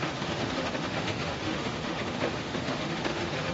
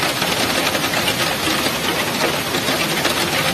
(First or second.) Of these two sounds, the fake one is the first